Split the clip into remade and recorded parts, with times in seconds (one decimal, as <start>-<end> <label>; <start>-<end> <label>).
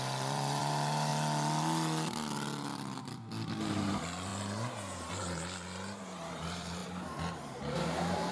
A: 0.0-1.1 remade; 1.1-3.7 recorded; 3.7-4.3 remade; 4.3-6.3 recorded; 6.3-8.3 remade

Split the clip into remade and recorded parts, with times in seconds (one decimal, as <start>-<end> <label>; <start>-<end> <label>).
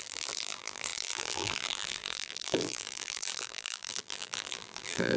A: 0.0-5.2 remade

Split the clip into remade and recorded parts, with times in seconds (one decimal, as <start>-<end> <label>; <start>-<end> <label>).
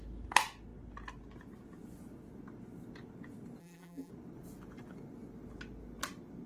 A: 0.0-3.6 recorded; 3.6-4.1 remade; 4.1-6.5 recorded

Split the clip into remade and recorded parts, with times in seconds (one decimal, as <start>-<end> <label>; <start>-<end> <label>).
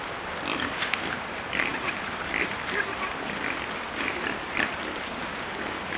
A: 0.0-6.0 remade